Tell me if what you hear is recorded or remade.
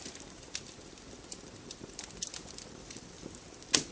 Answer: recorded